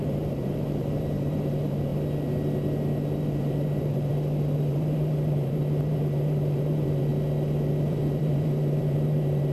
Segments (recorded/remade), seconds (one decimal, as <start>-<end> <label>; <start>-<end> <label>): 0.0-1.9 remade; 1.9-3.2 recorded; 3.2-4.1 remade; 4.1-4.7 recorded; 4.7-7.1 remade; 7.1-7.8 recorded; 7.8-9.5 remade